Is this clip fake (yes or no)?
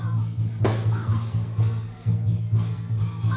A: yes